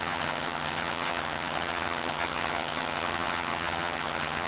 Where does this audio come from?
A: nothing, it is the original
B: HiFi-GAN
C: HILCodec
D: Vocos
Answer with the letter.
B